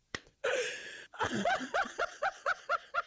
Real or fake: fake